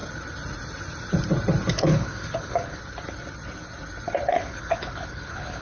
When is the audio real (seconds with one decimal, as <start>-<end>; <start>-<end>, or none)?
0.0-1.7; 2.8-4.3